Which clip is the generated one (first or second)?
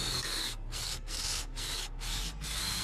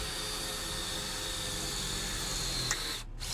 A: first